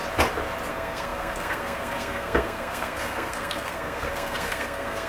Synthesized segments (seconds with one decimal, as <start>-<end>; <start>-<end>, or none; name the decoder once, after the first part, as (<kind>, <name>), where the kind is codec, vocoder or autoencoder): 0.7-5.1 (codec, SNAC)